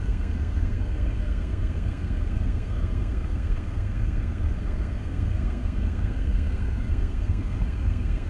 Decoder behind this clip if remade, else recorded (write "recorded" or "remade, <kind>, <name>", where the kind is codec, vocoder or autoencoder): remade, codec, SNAC